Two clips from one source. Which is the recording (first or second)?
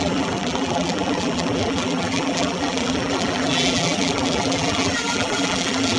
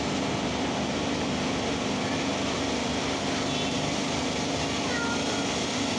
second